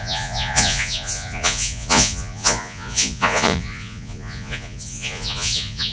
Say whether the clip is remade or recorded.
remade